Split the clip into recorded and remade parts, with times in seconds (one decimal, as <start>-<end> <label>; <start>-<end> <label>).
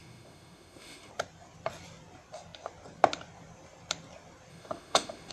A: 0.0-1.1 remade; 1.1-4.5 recorded; 4.5-5.3 remade